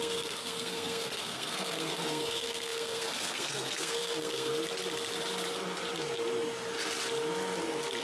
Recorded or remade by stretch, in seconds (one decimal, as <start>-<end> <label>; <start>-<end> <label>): 0.0-4.5 remade; 4.5-8.0 recorded